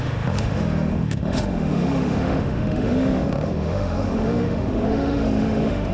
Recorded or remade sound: remade